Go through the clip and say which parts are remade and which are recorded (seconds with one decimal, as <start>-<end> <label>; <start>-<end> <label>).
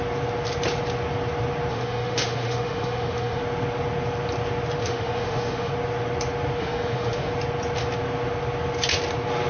0.0-1.7 recorded; 1.7-3.4 remade; 3.4-4.8 recorded; 4.8-5.7 remade; 5.7-6.6 recorded; 6.6-7.3 remade; 7.3-9.5 recorded